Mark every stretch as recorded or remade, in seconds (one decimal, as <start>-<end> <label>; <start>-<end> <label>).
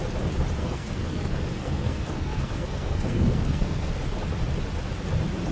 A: 0.0-0.6 recorded; 0.6-3.9 remade; 3.9-5.5 recorded